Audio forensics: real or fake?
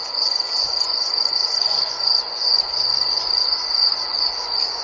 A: fake